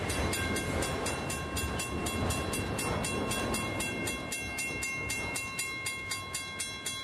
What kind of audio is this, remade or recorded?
recorded